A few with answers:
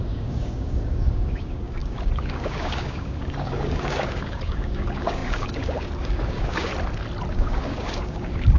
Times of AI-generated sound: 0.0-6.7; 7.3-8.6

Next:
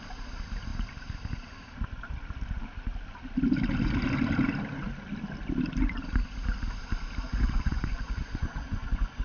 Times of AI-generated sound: 7.3-9.2

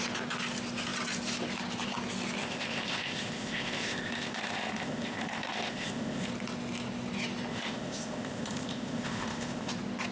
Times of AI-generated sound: 2.4-6.3; 7.5-9.7